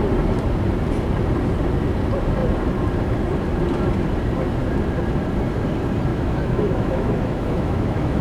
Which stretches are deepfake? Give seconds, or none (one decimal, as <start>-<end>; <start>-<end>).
6.1-8.2